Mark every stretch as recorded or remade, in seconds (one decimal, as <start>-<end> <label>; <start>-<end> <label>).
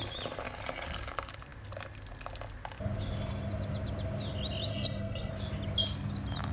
0.0-4.7 recorded; 4.7-5.3 remade; 5.3-6.5 recorded